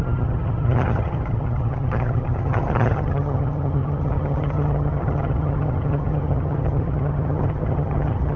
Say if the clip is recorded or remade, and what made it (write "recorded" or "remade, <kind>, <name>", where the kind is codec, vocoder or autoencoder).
remade, vocoder, HiFi-GAN